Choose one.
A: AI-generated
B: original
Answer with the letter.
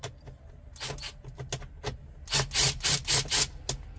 B